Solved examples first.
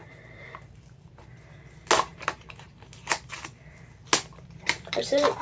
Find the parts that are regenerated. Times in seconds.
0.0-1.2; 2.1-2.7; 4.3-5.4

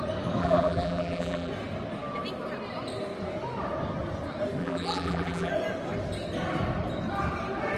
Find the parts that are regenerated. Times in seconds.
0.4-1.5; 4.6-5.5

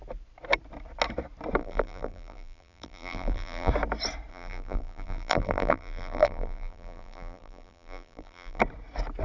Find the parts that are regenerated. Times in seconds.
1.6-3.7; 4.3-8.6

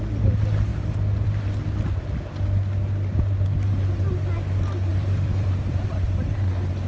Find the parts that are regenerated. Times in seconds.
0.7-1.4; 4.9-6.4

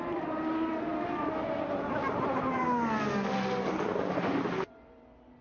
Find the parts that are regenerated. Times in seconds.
none

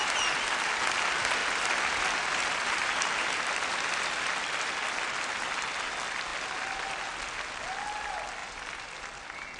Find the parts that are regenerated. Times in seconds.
1.4-4.7; 8.4-9.2

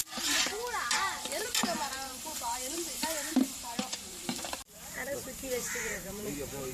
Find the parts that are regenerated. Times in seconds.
0.0-6.7